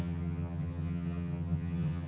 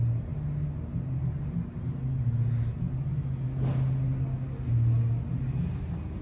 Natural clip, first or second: second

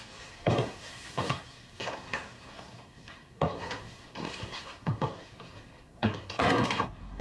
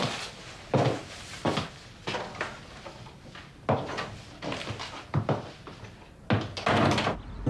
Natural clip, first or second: second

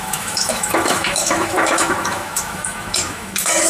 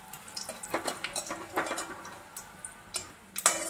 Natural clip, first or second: second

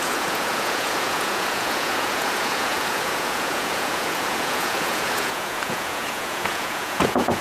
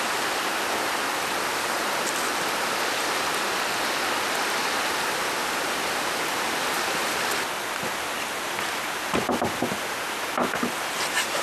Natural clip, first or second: second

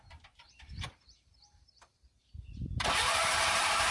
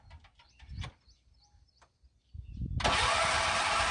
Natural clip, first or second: second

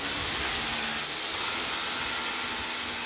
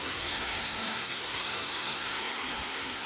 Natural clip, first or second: first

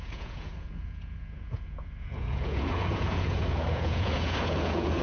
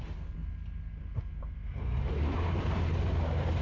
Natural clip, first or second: second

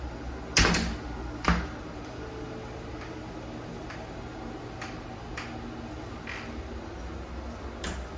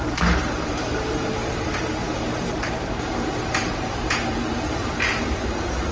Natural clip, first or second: first